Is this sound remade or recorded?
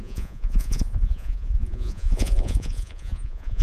remade